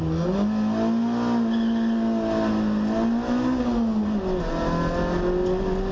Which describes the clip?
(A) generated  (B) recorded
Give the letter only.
B